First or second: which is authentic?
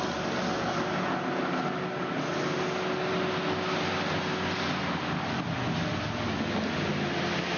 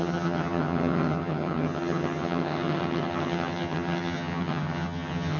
first